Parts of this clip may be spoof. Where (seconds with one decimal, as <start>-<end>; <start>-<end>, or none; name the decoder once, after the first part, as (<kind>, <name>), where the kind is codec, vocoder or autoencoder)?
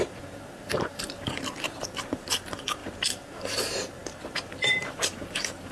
0.0-5.7 (vocoder, BigVGAN v2)